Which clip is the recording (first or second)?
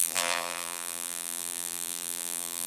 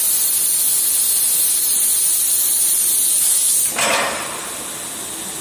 second